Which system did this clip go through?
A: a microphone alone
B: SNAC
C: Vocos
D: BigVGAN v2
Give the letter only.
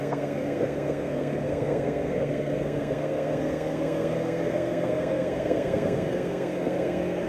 B